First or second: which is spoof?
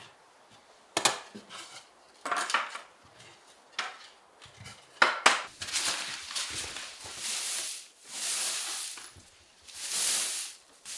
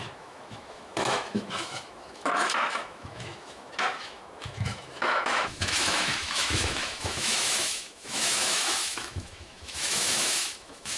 second